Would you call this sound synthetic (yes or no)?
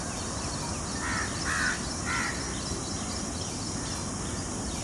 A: no